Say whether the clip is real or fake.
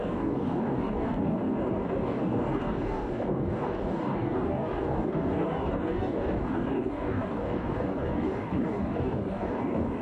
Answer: fake